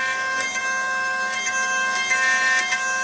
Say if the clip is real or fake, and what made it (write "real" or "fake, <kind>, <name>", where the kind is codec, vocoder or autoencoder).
real